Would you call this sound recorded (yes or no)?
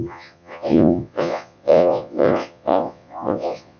no